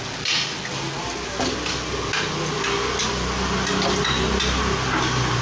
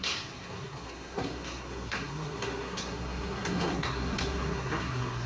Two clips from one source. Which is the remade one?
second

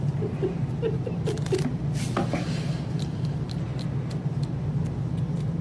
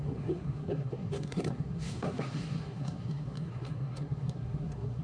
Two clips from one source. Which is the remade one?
second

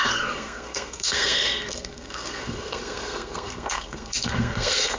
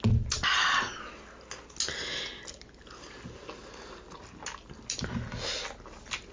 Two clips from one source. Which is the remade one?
first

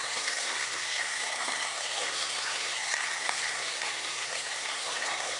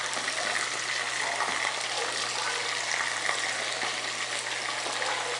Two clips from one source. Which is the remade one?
first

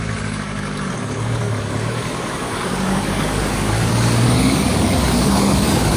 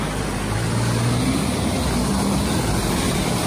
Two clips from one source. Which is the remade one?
first